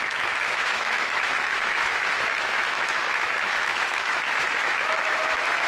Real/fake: fake